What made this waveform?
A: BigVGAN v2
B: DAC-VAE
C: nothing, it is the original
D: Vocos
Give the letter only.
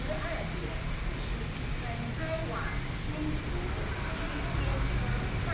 C